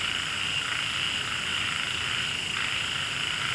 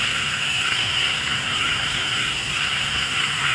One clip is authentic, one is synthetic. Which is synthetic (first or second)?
second